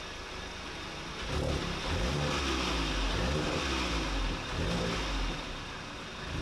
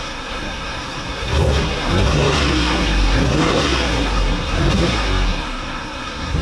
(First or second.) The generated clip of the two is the second